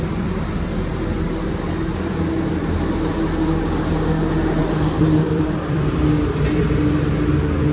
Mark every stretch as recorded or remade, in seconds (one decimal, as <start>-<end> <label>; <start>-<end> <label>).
0.0-4.6 recorded; 4.6-6.6 remade; 6.6-7.7 recorded